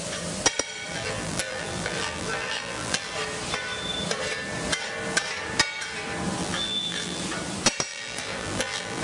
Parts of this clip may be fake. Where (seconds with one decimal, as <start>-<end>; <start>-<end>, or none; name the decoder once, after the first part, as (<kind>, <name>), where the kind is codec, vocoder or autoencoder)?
0.9-3.1 (vocoder, BigVGAN v2); 6.4-7.2; 7.9-9.0